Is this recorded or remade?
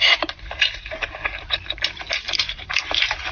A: remade